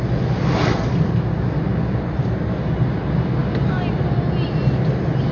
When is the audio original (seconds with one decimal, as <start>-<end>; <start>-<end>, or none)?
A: 0.0-5.3